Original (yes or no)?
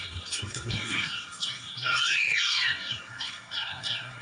no